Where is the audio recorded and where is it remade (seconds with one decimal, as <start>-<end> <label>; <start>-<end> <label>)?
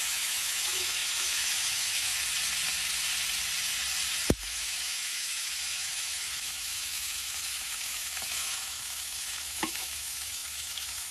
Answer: 0.0-2.1 remade; 2.1-4.4 recorded; 4.4-11.1 remade